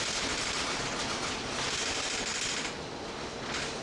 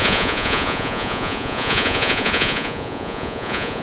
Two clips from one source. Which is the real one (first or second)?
first